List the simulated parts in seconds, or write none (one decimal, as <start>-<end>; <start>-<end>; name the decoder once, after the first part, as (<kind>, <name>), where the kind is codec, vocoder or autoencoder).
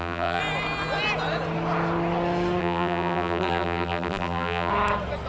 0.0-0.4 (vocoder, BigVGAN v2); 2.6-4.7